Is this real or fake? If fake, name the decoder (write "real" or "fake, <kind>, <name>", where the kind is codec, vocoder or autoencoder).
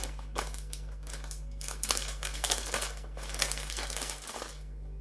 fake, codec, SNAC